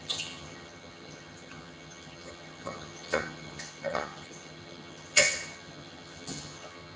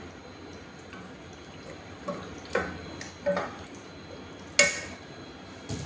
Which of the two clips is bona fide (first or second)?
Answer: second